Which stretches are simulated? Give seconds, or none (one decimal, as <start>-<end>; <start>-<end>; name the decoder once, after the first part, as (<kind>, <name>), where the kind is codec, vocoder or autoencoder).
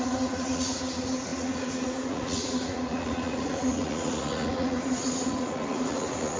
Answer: 0.0-6.4 (vocoder, Vocos)